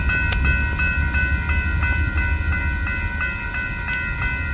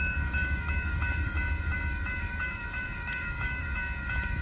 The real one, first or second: first